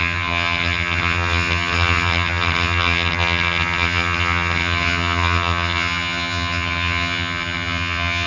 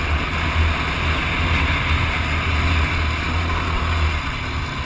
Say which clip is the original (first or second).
second